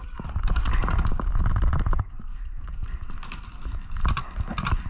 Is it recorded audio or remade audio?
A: recorded